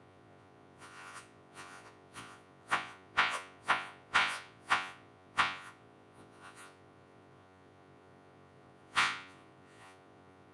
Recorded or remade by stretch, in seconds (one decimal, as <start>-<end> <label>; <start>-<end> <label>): 0.0-10.5 remade